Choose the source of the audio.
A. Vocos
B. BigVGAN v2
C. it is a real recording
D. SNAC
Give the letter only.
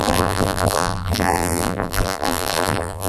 B